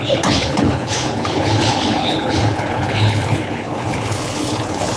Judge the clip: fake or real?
fake